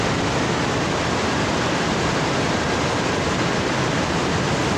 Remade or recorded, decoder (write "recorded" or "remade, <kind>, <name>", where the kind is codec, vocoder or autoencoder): remade, vocoder, BigVGAN v2